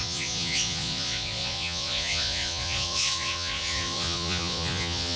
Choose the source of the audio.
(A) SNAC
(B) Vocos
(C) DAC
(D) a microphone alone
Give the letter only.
B